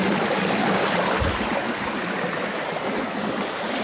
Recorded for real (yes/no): yes